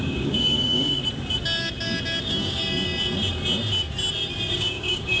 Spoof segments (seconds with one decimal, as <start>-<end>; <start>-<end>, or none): 0.0-1.0; 2.2-2.6; 4.5-5.2